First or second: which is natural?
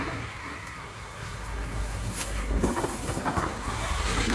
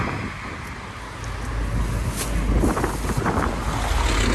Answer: second